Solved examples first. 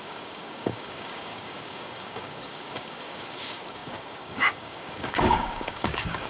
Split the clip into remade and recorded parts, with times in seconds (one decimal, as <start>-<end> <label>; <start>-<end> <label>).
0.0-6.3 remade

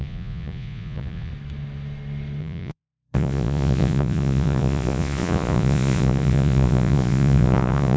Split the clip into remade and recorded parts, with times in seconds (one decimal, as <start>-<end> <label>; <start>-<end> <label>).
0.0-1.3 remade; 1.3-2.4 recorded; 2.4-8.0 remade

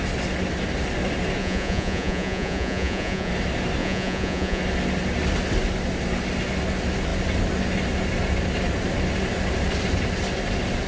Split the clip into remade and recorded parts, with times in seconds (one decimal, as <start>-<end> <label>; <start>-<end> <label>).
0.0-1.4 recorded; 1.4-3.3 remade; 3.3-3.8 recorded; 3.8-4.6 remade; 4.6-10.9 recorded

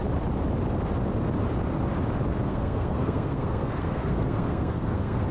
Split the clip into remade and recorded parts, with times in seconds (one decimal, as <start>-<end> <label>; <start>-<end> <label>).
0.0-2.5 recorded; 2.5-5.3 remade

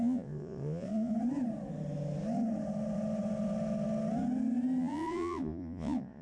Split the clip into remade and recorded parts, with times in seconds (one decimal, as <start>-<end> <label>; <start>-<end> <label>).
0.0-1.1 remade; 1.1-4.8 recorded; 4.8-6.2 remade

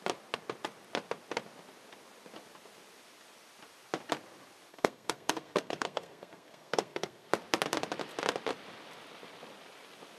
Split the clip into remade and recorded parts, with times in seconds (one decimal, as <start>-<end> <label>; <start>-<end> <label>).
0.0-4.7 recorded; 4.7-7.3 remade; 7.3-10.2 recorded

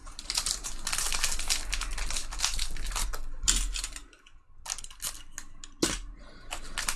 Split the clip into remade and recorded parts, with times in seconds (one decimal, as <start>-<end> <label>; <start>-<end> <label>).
0.0-0.7 remade; 0.7-7.0 recorded